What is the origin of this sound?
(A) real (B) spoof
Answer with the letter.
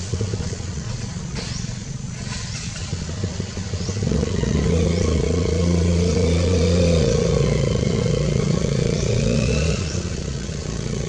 B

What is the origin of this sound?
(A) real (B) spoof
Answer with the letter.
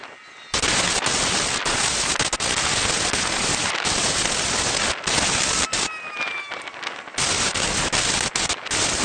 A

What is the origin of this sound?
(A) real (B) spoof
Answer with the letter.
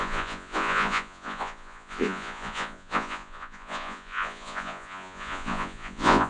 B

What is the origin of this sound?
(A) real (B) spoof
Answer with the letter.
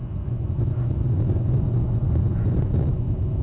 B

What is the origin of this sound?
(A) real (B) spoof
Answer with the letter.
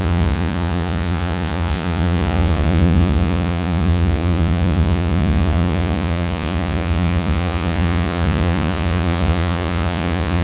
B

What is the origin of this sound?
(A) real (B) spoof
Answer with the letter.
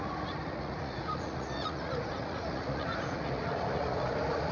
B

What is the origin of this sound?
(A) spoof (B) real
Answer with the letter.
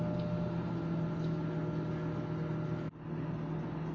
B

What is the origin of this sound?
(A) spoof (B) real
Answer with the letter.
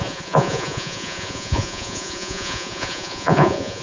A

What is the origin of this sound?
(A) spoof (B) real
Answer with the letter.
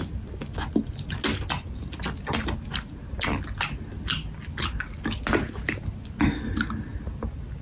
B